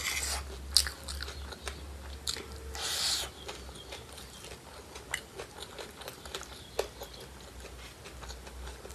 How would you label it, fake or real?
real